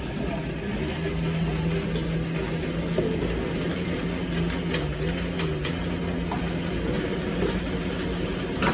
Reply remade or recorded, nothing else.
recorded